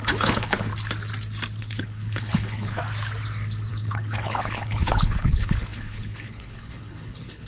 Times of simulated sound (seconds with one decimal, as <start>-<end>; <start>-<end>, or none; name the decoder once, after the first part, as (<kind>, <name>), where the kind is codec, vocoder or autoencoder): 0.0-0.7 (codec, HILCodec); 1.6-2.8; 3.7-7.5